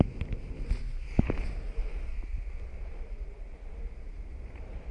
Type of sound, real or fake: real